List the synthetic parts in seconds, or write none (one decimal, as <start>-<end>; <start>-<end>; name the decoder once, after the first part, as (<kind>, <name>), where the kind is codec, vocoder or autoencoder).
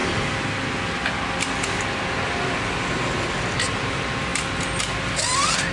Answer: none